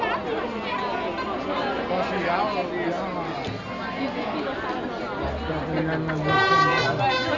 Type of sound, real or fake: real